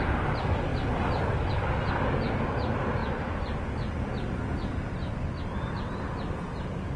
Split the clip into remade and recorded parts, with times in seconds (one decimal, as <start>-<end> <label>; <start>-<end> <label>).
0.0-7.0 recorded